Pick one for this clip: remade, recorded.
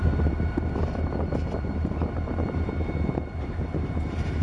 remade